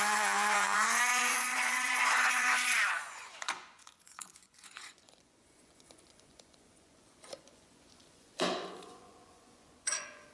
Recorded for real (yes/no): no